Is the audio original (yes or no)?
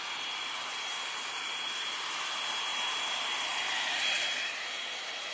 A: no